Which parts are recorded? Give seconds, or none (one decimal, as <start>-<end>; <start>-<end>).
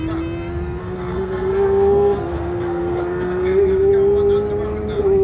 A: 0.0-0.8; 3.9-5.2